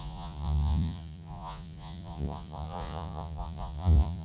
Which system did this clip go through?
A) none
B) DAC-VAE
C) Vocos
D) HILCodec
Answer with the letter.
C